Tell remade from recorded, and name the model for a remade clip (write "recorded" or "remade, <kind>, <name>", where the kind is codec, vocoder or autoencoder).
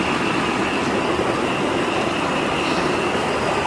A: recorded